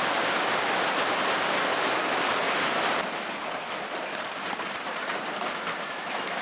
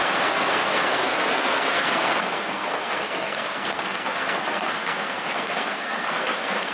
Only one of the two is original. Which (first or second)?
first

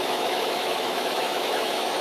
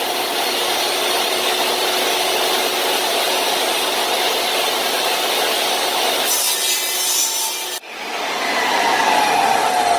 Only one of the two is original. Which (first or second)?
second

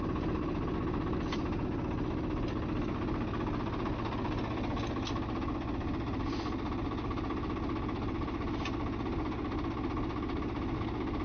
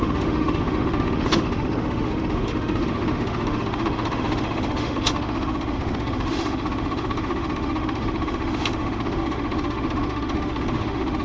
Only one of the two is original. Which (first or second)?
first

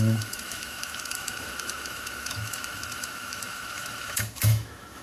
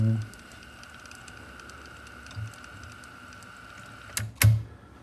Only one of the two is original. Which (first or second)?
second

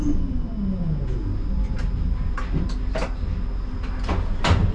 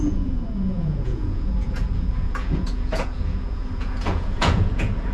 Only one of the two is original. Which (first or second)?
first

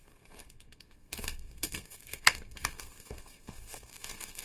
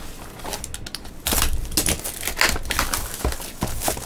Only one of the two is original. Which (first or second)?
second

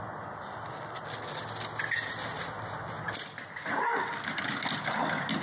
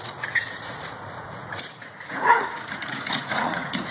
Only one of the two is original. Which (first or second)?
first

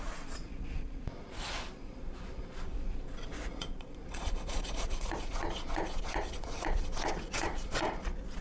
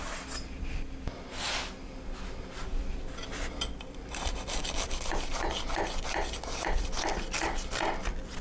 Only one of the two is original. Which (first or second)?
second